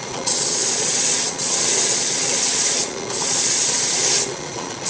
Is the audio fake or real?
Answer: fake